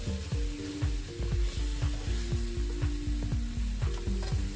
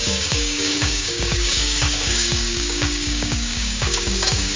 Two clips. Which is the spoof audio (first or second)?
second